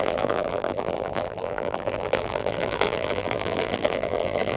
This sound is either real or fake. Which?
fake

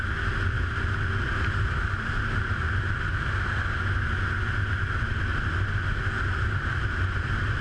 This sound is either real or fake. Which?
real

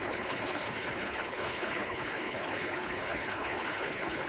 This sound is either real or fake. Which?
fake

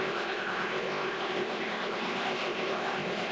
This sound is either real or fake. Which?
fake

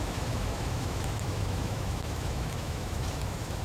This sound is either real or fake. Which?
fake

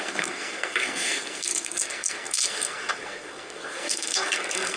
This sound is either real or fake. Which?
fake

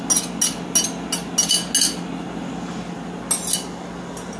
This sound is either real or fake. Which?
real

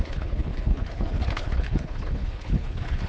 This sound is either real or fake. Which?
fake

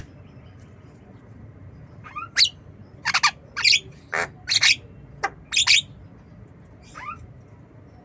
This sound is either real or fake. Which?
real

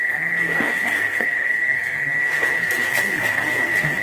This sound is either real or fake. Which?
fake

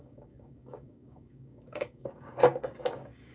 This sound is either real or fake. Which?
fake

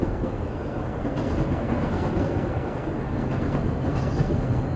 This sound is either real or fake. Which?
fake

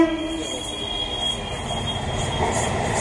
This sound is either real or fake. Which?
real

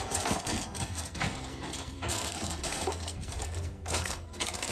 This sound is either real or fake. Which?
fake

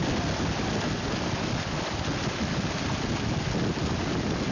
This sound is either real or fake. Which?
real